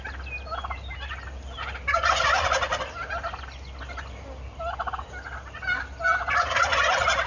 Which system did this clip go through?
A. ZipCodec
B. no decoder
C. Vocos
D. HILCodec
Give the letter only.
B